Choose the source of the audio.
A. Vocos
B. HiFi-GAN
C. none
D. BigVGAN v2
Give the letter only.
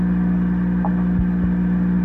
C